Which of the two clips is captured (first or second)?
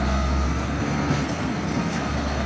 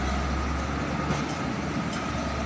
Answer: second